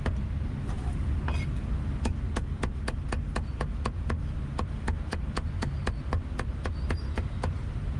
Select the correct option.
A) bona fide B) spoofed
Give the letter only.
A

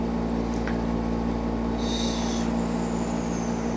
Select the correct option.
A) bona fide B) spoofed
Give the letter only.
A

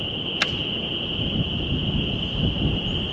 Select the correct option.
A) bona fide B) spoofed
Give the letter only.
A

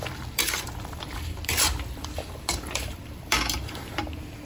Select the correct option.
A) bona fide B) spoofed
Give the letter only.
B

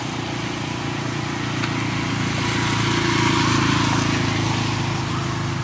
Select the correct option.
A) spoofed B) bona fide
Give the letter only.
B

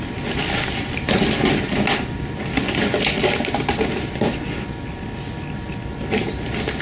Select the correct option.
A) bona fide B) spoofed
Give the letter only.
A